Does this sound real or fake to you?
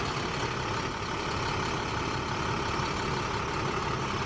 real